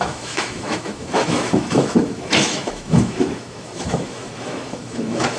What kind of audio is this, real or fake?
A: fake